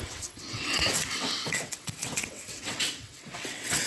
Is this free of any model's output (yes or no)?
no